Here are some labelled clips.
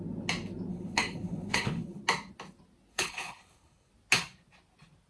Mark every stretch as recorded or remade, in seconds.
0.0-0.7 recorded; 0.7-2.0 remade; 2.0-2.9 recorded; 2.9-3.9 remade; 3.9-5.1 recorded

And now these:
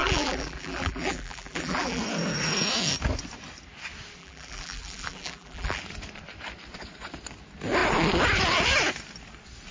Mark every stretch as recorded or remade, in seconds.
0.0-2.0 remade; 2.0-4.2 recorded; 4.2-5.8 remade; 5.8-9.7 recorded

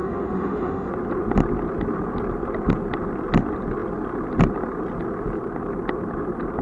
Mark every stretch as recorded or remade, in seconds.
0.0-0.9 remade; 0.9-6.6 recorded

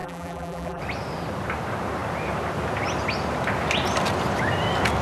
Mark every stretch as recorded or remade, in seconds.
0.0-0.8 remade; 0.8-5.0 recorded

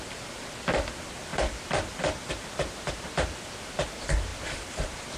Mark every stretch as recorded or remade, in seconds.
0.0-1.3 recorded; 1.3-2.3 remade; 2.3-4.3 recorded; 4.3-5.2 remade

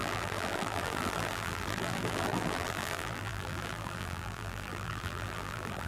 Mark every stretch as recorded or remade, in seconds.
0.0-5.9 remade